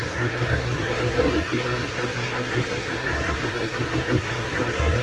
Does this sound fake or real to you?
fake